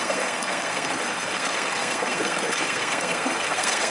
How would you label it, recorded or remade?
remade